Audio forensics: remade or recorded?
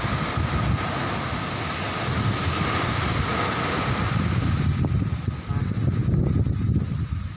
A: recorded